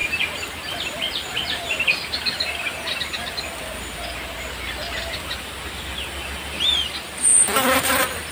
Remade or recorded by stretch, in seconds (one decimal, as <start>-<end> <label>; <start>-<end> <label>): 0.0-8.3 recorded